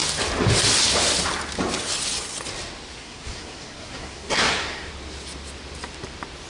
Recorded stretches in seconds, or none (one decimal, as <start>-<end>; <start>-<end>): 0.0-3.0; 4.9-6.5